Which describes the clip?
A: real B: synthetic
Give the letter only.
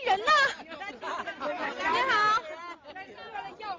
A